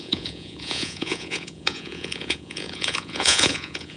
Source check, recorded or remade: remade